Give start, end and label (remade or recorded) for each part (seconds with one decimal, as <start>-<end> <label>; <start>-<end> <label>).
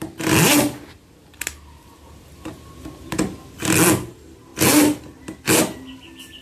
0.0-6.4 recorded